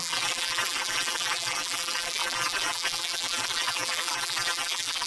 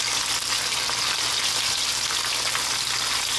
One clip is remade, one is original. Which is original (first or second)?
second